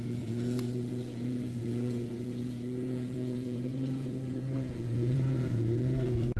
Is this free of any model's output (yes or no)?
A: no